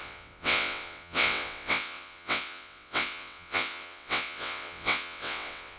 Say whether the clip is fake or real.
fake